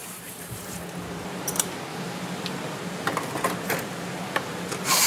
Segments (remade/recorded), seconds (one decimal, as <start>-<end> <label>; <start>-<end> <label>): 0.0-0.8 remade; 0.8-1.9 recorded; 1.9-5.1 remade